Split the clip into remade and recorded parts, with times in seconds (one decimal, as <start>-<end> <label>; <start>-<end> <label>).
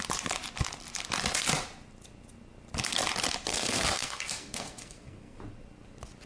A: 0.0-3.5 recorded; 3.5-5.4 remade; 5.4-6.3 recorded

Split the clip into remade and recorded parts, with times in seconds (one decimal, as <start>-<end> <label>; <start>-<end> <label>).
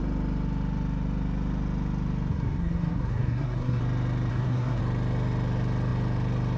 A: 0.0-2.3 recorded; 2.3-3.8 remade; 3.8-4.3 recorded; 4.3-4.8 remade; 4.8-6.6 recorded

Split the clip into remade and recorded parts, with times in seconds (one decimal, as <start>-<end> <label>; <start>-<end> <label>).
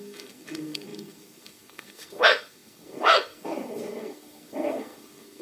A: 0.0-5.4 remade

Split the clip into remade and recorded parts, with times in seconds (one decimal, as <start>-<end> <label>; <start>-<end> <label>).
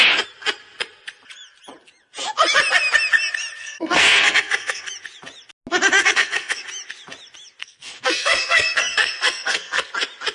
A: 0.0-3.6 recorded; 3.6-4.9 remade; 4.9-6.0 recorded; 6.0-6.6 remade; 6.6-7.6 recorded; 7.6-9.9 remade; 9.9-10.3 recorded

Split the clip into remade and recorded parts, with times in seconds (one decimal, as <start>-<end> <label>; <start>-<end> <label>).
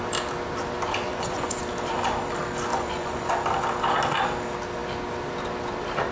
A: 0.0-1.1 recorded; 1.1-1.6 remade; 1.6-2.7 recorded; 2.7-3.3 remade; 3.3-6.1 recorded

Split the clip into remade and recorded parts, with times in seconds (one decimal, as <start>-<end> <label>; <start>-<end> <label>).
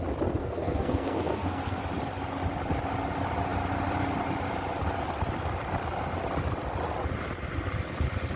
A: 0.0-0.4 recorded; 0.4-1.8 remade; 1.8-8.4 recorded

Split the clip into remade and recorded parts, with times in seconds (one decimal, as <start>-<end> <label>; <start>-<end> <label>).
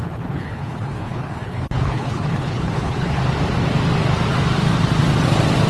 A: 0.0-3.2 remade; 3.2-5.7 recorded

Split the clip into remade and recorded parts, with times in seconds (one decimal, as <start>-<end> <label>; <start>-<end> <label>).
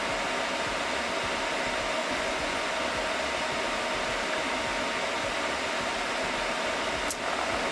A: 0.0-2.0 recorded; 2.0-2.7 remade; 2.7-7.7 recorded